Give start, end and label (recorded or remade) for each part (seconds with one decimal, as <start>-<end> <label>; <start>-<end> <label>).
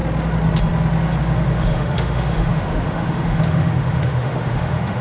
0.0-1.2 recorded; 1.2-5.0 remade